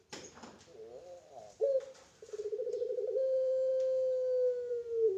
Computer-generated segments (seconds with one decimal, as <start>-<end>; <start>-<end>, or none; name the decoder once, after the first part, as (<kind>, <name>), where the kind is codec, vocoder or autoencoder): 0.0-3.7 (vocoder, BigVGAN v2); 4.7-5.2